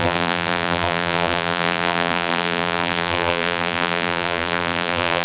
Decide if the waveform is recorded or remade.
remade